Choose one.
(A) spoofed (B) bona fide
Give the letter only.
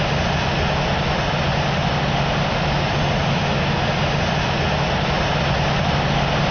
B